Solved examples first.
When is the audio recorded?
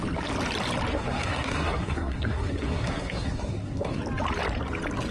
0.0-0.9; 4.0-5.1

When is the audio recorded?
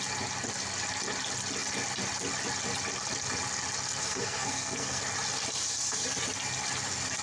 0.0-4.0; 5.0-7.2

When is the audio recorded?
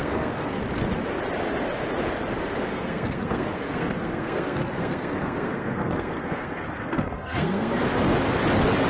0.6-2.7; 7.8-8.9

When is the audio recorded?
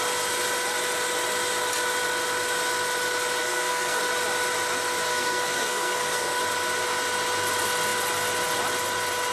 0.0-3.4; 4.0-5.1; 6.4-9.3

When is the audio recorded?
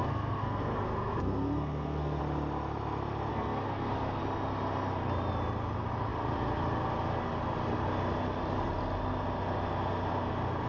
2.2-3.3; 4.2-10.7